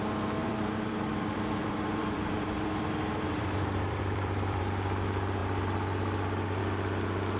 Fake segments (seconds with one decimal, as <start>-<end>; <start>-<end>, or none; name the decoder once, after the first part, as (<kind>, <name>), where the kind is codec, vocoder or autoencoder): 0.4-4.6 (vocoder, BigVGAN v2)